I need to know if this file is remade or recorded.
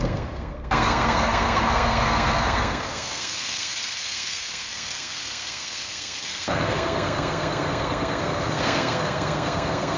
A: remade